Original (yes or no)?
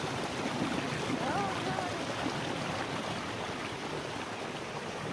yes